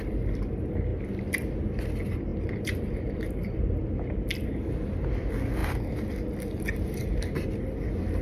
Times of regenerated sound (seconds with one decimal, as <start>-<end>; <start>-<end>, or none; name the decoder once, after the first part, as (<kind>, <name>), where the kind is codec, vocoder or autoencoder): 2.3-3.6 (vocoder, BigVGAN v2)